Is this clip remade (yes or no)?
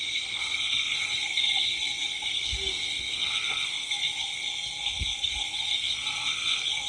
yes